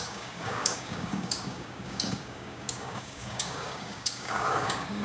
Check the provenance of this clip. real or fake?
fake